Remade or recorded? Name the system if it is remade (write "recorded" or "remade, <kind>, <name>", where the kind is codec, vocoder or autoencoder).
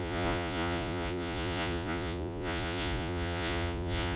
remade, vocoder, Vocos